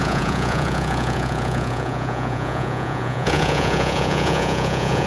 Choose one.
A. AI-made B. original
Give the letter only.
A